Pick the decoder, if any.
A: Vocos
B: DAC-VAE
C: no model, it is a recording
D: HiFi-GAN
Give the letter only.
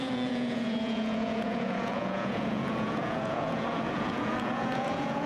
A